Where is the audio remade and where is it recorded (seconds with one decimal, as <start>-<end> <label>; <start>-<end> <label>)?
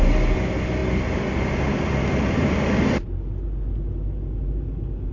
0.0-5.1 recorded